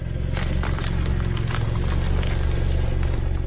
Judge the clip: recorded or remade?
recorded